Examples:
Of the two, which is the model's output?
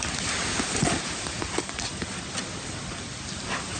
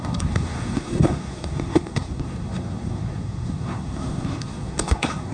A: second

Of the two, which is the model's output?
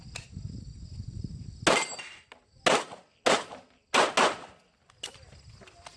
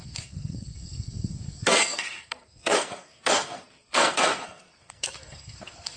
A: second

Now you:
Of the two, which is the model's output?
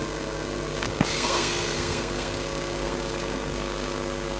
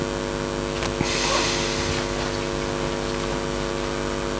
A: first